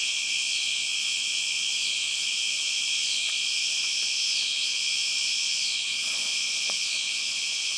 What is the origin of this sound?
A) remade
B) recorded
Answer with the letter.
A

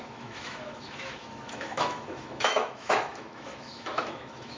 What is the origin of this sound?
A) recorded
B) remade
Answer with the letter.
B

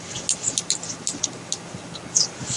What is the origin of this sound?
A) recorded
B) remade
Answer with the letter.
A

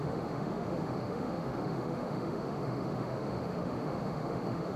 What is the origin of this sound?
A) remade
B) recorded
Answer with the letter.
A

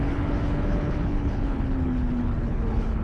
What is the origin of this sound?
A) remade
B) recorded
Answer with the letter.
A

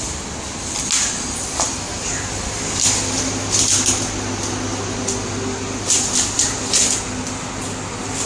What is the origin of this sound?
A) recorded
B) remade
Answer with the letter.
A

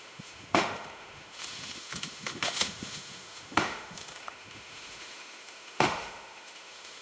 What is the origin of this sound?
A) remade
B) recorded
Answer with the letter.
A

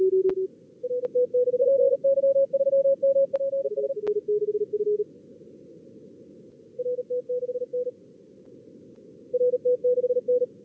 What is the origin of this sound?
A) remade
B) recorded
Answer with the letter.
B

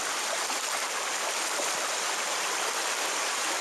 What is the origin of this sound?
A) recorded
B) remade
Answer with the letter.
A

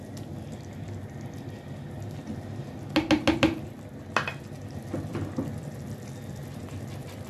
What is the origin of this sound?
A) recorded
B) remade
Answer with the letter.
A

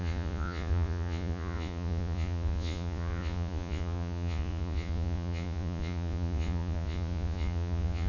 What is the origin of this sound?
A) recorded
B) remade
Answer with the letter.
B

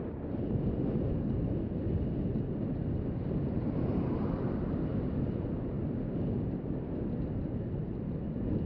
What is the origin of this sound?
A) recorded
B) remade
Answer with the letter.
A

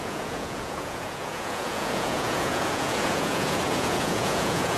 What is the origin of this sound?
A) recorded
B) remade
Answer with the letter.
B